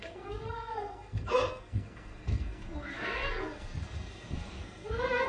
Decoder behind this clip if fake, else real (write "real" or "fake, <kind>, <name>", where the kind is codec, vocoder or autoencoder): fake, codec, SNAC